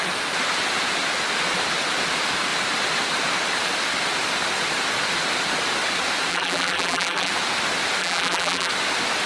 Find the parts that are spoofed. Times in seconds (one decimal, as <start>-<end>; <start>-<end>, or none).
6.3-7.3; 8.0-8.7